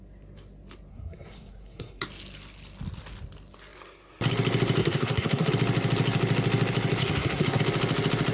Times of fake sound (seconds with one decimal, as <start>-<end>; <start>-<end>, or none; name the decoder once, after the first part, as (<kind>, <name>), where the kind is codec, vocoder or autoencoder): 0.9-2.0 (codec, SNAC); 4.8-5.5; 7.0-7.6